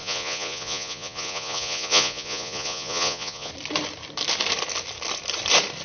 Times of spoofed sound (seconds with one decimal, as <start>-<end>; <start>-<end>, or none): 0.0-3.5